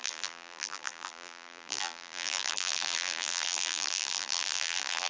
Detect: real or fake fake